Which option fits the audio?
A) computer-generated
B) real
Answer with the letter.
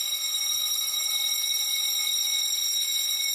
B